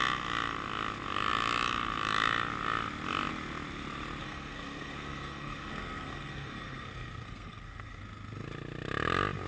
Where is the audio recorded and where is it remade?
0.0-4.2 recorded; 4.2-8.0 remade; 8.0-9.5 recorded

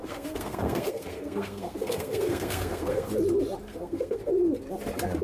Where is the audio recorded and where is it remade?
0.0-3.1 remade; 3.1-3.7 recorded; 3.7-4.3 remade; 4.3-5.2 recorded